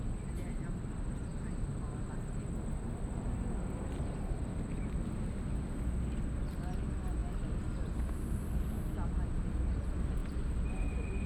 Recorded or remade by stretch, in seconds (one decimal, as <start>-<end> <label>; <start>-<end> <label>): 0.0-10.2 recorded; 10.2-11.3 remade